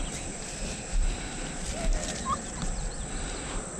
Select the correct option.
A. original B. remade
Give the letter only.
A